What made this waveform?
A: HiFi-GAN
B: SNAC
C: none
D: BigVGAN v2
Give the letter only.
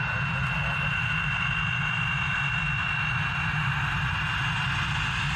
C